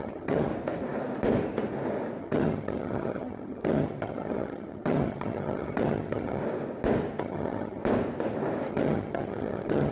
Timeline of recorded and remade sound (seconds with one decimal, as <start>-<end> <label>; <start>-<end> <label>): 0.0-0.5 remade; 0.5-2.2 recorded; 2.2-6.4 remade; 6.4-7.2 recorded; 7.2-7.8 remade; 7.8-8.7 recorded; 8.7-9.9 remade